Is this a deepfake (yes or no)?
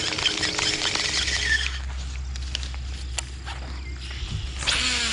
no